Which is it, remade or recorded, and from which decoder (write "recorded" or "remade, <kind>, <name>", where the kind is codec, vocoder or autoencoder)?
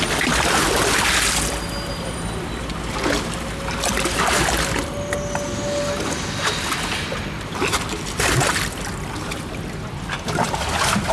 recorded